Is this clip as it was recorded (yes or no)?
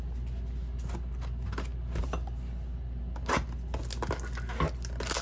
yes